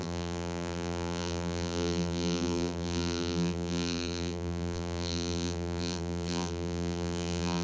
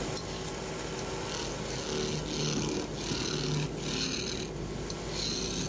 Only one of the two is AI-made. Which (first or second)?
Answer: first